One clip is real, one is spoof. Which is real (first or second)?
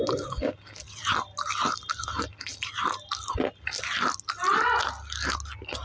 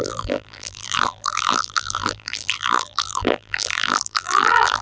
first